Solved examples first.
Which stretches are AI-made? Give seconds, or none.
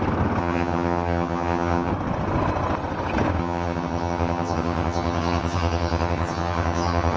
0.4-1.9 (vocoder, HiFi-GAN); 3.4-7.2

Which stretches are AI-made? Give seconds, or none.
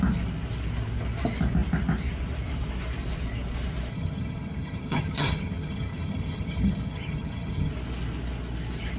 3.9-7.7 (vocoder, HiFi-GAN)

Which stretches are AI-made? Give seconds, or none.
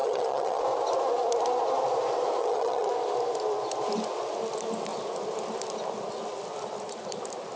0.0-0.6 (vocoder, HiFi-GAN); 2.4-2.9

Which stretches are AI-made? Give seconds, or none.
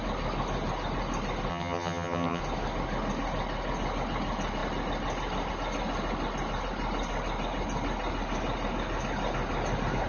1.5-2.4 (vocoder, HiFi-GAN)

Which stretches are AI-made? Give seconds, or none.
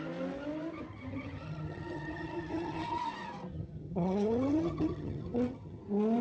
0.9-3.0 (vocoder, HiFi-GAN); 3.5-5.8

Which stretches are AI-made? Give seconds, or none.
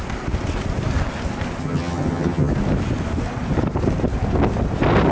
1.6-2.5 (vocoder, HiFi-GAN)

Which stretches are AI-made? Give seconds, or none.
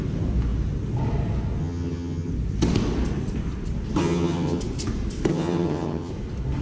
1.6-2.3 (vocoder, HiFi-GAN); 4.0-4.6; 5.3-6.1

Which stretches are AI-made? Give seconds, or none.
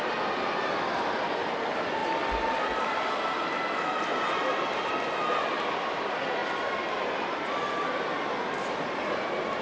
none